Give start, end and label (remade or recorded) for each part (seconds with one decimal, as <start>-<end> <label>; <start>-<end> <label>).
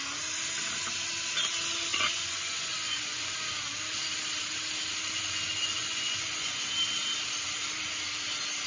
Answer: 0.0-1.9 recorded; 1.9-3.3 remade; 3.3-5.8 recorded; 5.8-6.6 remade; 6.6-8.7 recorded